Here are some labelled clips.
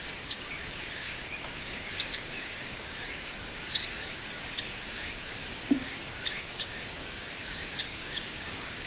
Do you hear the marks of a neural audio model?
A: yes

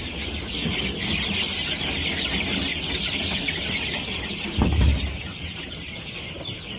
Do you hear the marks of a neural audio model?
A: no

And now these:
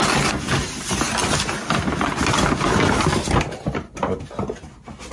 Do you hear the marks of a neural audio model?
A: no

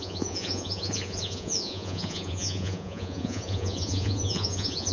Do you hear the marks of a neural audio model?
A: yes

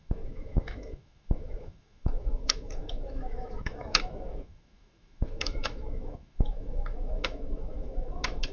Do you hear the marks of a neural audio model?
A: yes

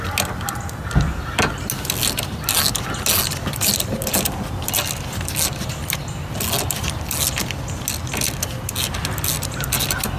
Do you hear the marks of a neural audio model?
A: no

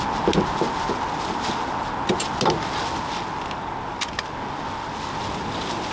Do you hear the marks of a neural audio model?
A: no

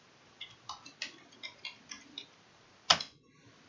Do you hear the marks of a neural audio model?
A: no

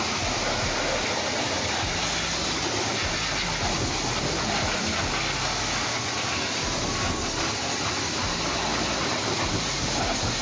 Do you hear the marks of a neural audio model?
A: no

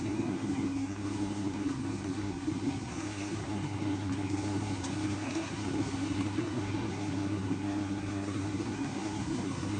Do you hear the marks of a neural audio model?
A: yes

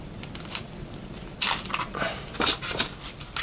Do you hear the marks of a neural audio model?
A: no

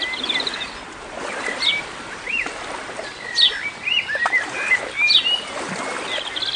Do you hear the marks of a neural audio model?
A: no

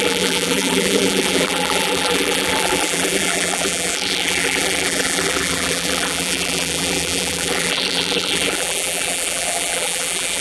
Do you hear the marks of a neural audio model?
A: yes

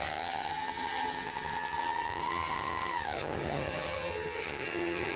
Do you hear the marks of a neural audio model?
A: yes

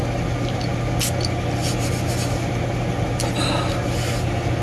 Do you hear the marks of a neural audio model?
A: no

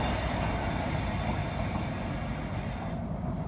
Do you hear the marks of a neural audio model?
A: no